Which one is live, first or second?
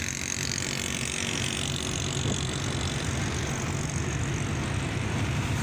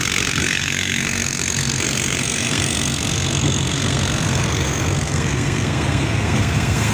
first